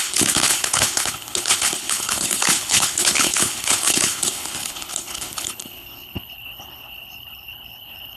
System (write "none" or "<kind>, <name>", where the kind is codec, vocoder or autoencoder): codec, HILCodec